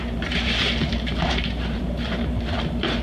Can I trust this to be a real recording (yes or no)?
no